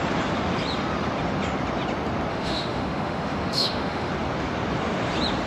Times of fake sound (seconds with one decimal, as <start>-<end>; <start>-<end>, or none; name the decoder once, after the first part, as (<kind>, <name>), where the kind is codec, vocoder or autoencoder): 2.3-4.1 (autoencoder, DAC-VAE)